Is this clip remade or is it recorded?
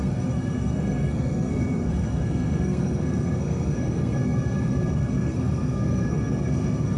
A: remade